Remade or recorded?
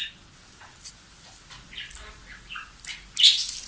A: recorded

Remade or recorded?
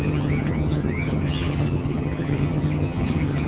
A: remade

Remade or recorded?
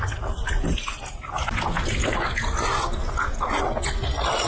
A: recorded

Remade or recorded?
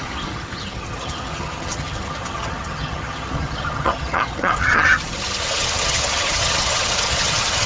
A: remade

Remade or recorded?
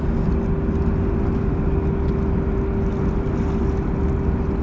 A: recorded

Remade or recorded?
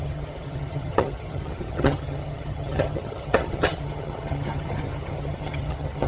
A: remade